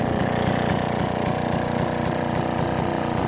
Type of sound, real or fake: real